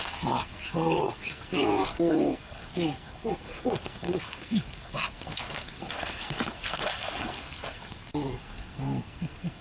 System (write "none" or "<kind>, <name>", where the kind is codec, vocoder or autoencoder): codec, SNAC